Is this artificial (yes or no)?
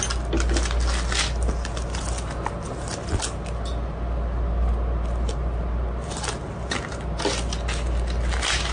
no